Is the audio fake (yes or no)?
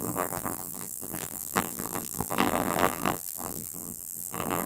yes